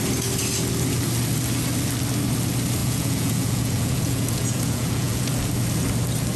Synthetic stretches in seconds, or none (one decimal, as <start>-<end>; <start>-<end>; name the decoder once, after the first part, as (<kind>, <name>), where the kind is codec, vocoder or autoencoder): 2.8-5.3 (vocoder, Vocos)

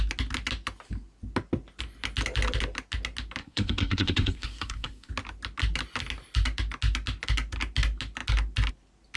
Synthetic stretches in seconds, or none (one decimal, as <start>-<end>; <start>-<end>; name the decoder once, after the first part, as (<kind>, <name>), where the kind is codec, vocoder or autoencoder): 3.4-5.1 (codec, SNAC)

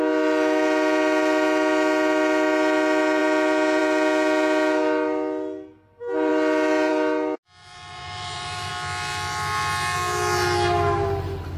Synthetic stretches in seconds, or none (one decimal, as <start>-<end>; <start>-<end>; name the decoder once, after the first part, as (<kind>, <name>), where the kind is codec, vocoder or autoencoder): 7.6-8.7 (vocoder, BigVGAN v2)

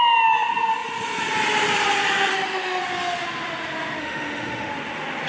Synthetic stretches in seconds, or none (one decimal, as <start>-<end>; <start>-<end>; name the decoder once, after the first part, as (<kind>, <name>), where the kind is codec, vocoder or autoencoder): 2.3-2.8 (autoencoder, DAC-VAE); 4.0-4.7

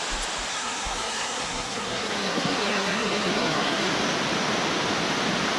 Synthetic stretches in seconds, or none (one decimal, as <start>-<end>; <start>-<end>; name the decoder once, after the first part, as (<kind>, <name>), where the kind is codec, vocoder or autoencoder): 0.5-3.9 (codec, SNAC)

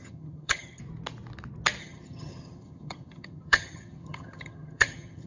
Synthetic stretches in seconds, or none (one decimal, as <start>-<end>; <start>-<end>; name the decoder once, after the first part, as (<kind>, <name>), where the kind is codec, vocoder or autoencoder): 0.0-0.8 (vocoder, HiFi-GAN); 1.8-5.3

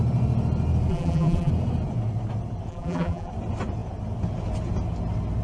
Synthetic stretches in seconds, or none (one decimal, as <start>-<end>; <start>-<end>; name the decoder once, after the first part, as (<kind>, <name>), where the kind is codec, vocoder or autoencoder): 0.9-1.5 (vocoder, BigVGAN v2); 2.7-3.3

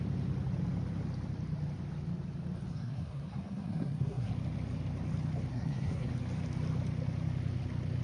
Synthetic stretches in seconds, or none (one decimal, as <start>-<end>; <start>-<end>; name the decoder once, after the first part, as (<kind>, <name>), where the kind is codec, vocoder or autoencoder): 2.7-4.3 (codec, SNAC); 5.5-6.1